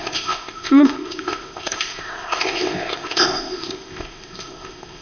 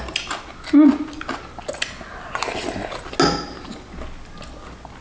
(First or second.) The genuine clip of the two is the second